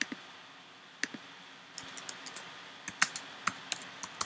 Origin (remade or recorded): recorded